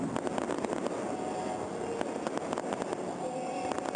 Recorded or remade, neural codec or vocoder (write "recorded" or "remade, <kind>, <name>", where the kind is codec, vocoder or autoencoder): recorded